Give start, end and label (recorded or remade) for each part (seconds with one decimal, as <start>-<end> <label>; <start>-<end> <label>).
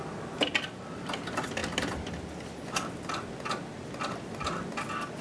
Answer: 0.0-5.2 recorded